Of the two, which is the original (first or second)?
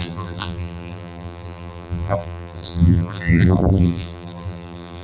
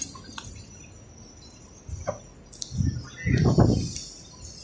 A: second